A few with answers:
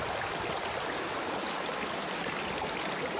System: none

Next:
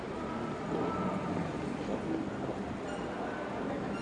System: none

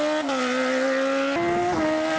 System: none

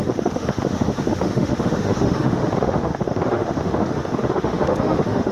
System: autoencoder, DAC-VAE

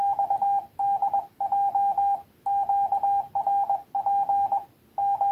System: none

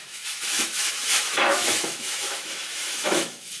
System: autoencoder, DAC-VAE